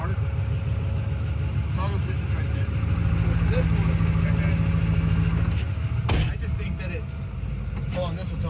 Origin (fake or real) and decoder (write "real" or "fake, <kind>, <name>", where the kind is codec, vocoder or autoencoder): real